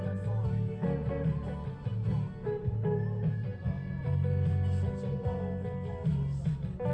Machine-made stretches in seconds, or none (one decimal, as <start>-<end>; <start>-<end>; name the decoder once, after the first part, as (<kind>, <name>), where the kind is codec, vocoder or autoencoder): none